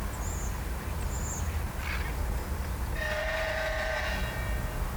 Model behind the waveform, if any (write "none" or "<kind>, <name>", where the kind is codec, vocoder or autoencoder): none